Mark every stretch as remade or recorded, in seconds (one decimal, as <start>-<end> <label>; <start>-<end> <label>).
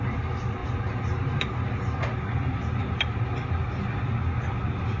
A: 0.0-5.0 recorded